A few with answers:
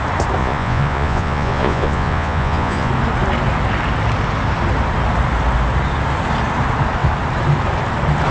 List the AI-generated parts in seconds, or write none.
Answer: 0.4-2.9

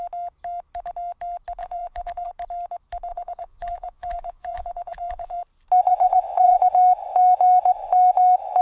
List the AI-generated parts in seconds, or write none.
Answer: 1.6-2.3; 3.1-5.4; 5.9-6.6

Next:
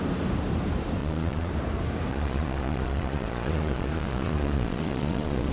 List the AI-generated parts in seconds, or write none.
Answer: 1.0-1.5; 2.1-5.5